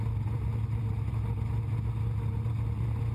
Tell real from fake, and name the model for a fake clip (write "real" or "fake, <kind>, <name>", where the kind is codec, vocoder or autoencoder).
real